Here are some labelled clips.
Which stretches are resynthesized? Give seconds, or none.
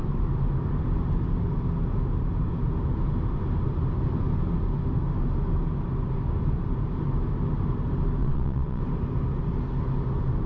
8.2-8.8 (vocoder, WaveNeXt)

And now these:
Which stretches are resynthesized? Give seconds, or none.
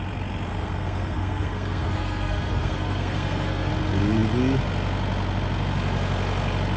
0.5-3.7 (codec, SNAC)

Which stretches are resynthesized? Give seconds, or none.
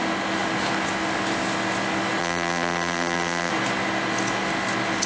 2.2-3.5 (vocoder, BigVGAN v2)